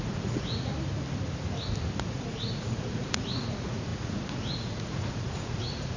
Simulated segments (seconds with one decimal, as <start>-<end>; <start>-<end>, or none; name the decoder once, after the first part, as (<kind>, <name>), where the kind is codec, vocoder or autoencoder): 0.0-0.7 (vocoder, Vocos); 2.1-6.0